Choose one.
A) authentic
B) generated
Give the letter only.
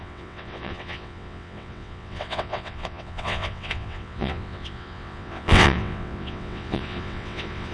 B